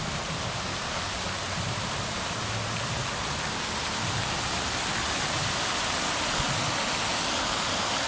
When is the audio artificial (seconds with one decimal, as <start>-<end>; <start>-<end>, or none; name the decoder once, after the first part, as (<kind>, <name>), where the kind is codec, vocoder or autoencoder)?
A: none